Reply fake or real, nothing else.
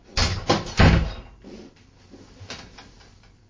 real